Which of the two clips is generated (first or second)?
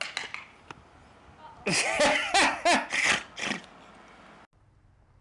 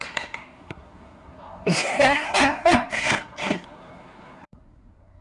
second